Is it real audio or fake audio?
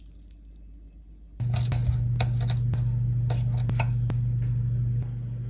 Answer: real